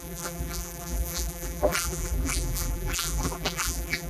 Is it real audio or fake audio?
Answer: fake